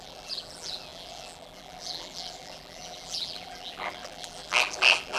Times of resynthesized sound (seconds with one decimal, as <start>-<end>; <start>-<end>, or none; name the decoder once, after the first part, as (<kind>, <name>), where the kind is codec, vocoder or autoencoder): 0.0-5.2 (vocoder, BigVGAN v2)